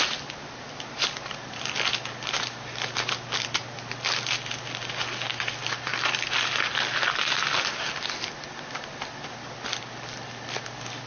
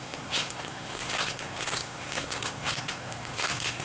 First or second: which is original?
first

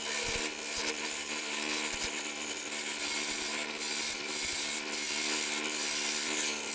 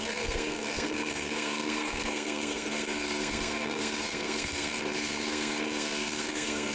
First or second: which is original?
first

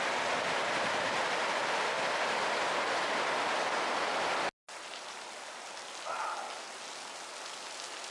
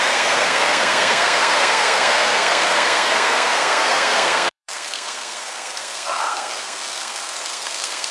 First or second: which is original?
first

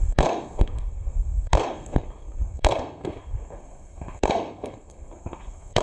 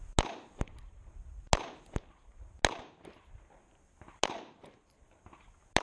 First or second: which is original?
second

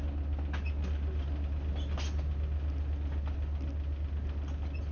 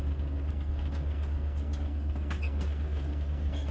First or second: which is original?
first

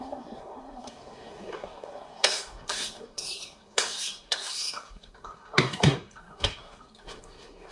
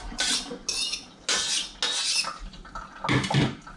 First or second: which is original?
second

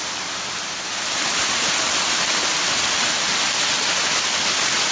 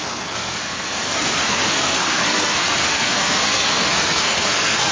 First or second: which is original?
first